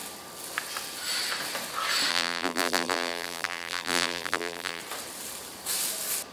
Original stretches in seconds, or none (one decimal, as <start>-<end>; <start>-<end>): 0.0-2.1; 4.8-6.3